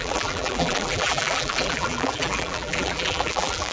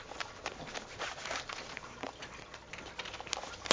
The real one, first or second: second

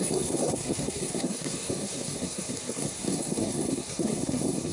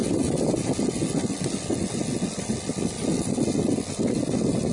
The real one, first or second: second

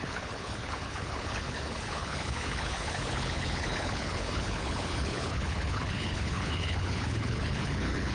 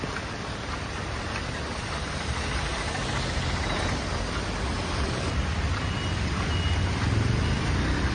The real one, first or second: second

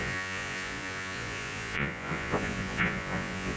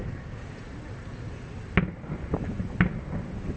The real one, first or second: second